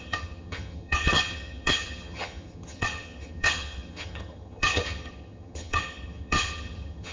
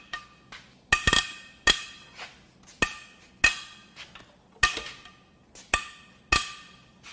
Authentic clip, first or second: second